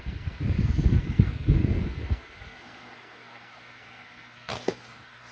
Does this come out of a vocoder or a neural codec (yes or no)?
yes